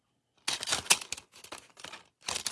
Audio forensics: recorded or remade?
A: recorded